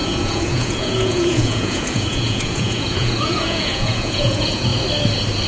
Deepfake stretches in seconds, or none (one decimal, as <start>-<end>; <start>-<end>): 0.0-4.7